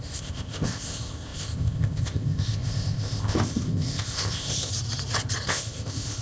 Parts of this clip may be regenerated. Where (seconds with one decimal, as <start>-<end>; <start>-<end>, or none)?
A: 0.0-4.7; 5.5-6.2